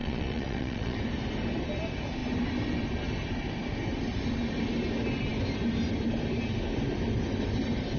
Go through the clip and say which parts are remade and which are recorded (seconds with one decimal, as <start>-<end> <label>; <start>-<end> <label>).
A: 0.0-1.0 remade; 1.0-8.0 recorded